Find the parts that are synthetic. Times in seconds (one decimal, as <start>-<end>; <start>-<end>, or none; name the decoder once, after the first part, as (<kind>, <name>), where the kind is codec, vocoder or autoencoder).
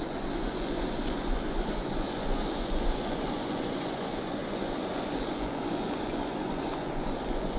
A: 0.0-7.6 (vocoder, Vocos)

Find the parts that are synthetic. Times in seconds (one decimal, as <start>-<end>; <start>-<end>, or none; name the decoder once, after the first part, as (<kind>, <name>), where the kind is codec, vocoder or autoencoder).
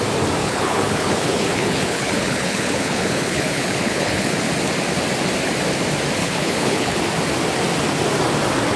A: 0.4-4.4 (codec, HILCodec); 6.2-7.0